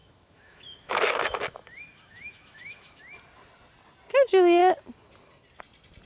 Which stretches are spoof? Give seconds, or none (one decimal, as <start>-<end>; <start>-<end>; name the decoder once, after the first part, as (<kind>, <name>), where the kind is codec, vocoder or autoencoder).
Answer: 0.0-3.0 (autoencoder, DAC-VAE)